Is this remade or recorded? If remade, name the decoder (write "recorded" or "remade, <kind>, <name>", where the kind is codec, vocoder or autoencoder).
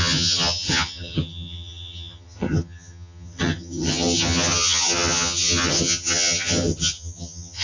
remade, vocoder, HiFi-GAN